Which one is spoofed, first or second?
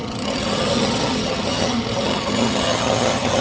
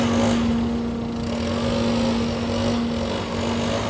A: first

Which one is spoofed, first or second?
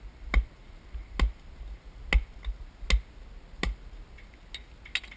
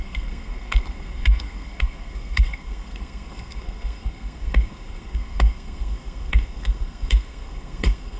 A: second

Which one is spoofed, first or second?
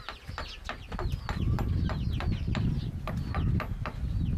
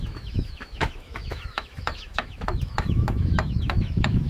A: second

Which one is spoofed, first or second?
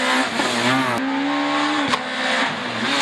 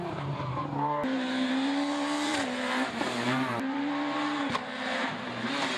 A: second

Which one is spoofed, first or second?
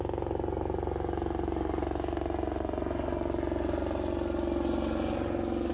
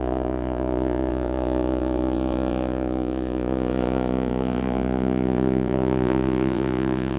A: second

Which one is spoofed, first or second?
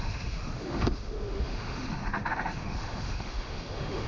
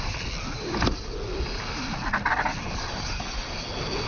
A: first